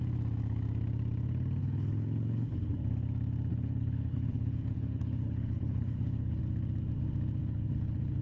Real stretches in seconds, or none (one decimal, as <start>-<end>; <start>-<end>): 0.0-1.6; 2.7-3.5; 6.4-7.4